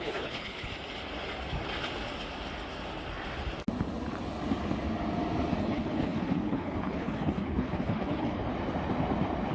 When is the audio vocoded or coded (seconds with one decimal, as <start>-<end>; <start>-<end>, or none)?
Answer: 0.0-0.7; 5.6-8.5